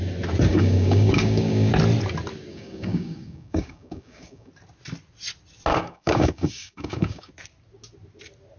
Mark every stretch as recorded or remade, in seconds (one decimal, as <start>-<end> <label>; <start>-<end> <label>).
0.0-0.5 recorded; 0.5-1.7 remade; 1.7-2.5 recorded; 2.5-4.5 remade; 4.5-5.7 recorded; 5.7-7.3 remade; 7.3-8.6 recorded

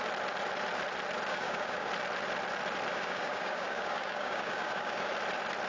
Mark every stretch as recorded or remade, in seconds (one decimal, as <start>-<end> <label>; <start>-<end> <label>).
0.0-1.3 recorded; 1.3-1.9 remade; 1.9-2.9 recorded; 2.9-5.1 remade; 5.1-5.7 recorded

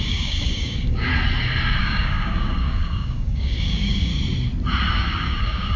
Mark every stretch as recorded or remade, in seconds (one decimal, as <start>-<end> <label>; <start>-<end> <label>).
0.0-1.1 remade; 1.1-1.8 recorded; 1.8-4.1 remade; 4.1-4.9 recorded; 4.9-5.8 remade